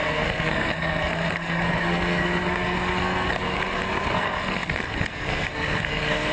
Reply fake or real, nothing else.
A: fake